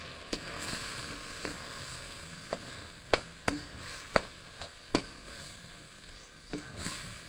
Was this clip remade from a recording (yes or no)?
yes